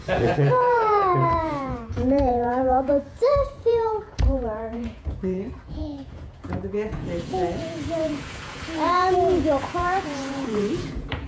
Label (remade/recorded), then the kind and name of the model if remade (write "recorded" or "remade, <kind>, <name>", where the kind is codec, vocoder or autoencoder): remade, vocoder, Vocos